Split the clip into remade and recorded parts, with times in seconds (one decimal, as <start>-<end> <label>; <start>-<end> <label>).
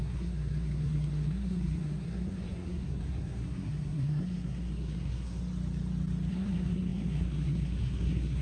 0.0-5.4 remade; 5.4-6.3 recorded; 6.3-8.4 remade